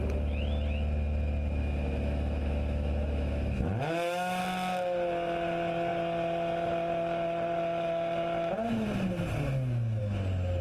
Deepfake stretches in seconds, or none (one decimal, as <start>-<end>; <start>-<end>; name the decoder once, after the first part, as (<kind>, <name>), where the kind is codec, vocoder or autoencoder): 1.6-4.4 (autoencoder, DAC-VAE)